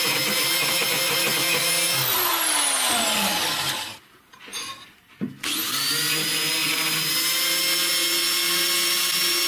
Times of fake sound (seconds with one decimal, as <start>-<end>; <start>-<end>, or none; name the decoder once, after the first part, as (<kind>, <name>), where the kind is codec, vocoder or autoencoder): none